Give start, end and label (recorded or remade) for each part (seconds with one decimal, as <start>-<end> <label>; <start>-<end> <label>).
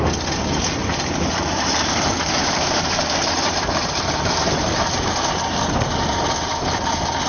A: 0.0-0.8 recorded; 0.8-5.1 remade; 5.1-7.3 recorded